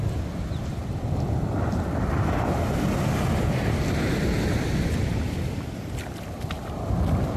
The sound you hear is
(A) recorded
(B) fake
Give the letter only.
A